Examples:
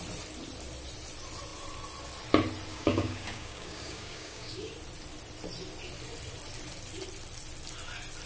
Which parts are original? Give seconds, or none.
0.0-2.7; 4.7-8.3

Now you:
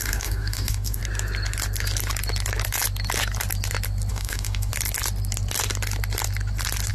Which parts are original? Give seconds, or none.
1.0-4.1; 4.7-6.9

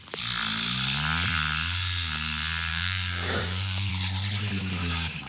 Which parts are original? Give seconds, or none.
0.0-2.7; 3.9-4.8

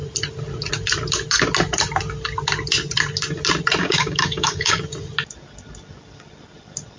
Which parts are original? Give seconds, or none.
0.0-3.8; 4.8-7.0

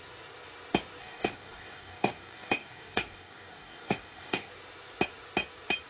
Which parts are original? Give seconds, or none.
0.0-1.0; 4.5-5.9

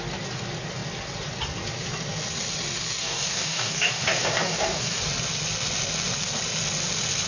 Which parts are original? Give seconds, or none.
0.0-3.0; 5.0-7.3